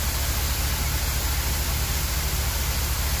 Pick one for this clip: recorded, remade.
recorded